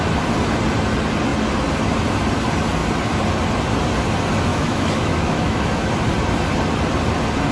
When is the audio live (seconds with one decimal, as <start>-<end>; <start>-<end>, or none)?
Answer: 0.0-4.5; 5.9-7.5